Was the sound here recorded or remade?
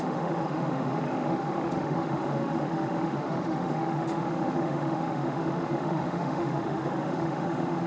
remade